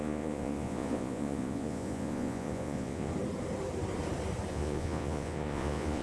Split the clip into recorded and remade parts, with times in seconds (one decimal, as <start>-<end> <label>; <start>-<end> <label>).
0.0-3.1 remade; 3.1-4.5 recorded; 4.5-6.0 remade